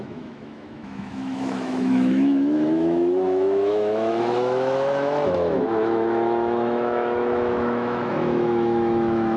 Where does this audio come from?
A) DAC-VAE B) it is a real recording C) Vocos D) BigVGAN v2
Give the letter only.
A